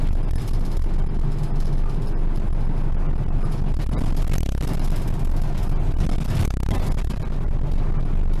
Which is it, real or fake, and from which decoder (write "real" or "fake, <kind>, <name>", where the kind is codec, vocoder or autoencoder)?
real